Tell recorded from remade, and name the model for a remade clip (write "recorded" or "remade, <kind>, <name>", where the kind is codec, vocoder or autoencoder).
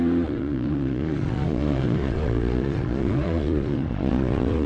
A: remade, vocoder, Vocos